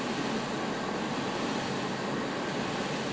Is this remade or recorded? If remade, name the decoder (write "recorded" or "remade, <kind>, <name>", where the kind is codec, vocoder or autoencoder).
recorded